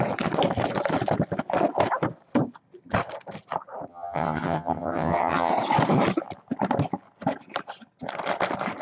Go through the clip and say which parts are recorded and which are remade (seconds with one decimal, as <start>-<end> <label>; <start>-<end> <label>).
0.0-3.9 recorded; 3.9-5.5 remade; 5.5-8.8 recorded